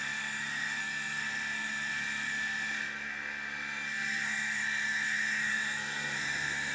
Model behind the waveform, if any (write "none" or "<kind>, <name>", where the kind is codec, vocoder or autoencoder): codec, SNAC